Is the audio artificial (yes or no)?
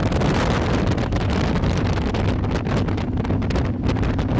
yes